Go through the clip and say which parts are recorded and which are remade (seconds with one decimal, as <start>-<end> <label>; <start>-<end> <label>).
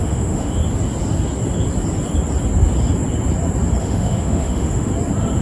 0.0-0.6 remade; 0.6-3.8 recorded; 3.8-4.9 remade; 4.9-5.4 recorded